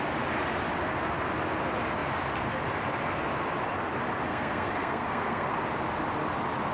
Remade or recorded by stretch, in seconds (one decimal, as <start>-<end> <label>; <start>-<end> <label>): 0.0-4.3 recorded; 4.3-5.5 remade; 5.5-6.7 recorded